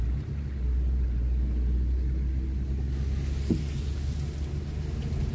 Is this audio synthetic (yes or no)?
no